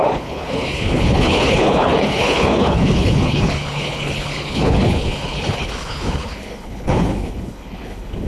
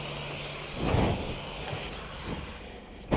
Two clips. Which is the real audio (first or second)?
second